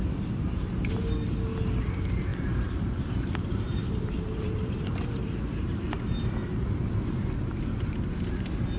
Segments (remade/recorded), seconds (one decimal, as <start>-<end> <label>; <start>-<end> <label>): 0.0-2.3 recorded; 2.3-6.0 remade; 6.0-6.4 recorded; 6.4-6.9 remade; 6.9-8.8 recorded